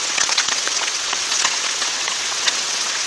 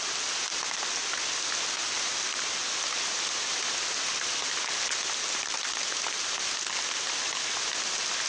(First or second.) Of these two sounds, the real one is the second